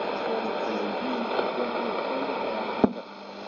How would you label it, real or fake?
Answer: real